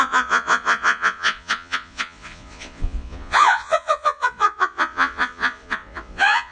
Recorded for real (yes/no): no